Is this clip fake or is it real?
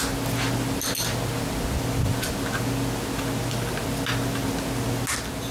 real